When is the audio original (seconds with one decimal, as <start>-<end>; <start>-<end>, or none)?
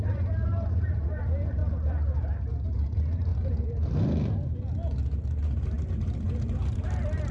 1.6-2.9; 3.3-6.6